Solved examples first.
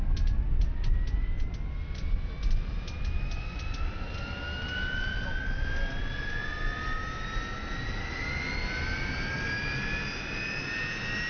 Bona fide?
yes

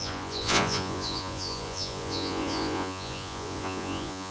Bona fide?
no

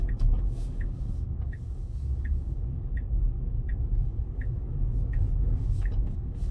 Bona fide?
no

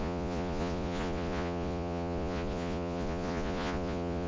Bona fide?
no